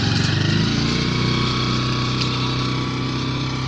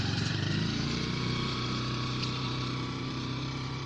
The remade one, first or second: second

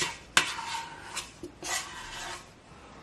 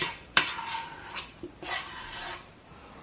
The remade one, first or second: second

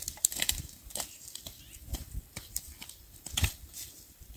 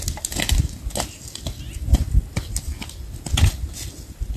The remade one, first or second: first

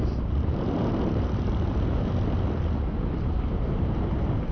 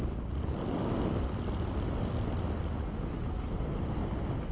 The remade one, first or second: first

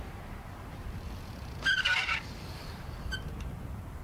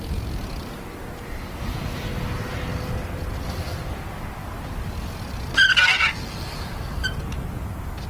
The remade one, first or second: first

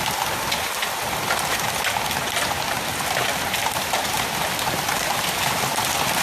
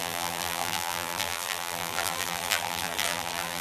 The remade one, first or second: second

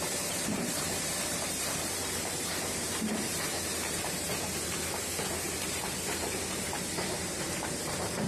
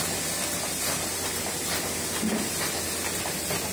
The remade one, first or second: first